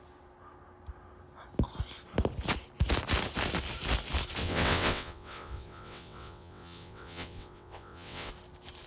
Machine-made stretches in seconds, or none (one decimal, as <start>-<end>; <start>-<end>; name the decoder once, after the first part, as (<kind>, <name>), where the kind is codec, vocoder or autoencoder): 4.4-8.3 (vocoder, WaveNeXt)